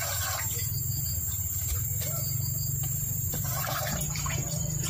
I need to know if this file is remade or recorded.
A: remade